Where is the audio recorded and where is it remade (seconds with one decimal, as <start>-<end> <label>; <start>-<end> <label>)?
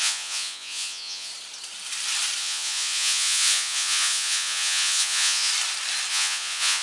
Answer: 0.0-1.3 remade; 1.3-2.4 recorded; 2.4-5.5 remade; 5.5-6.1 recorded; 6.1-6.8 remade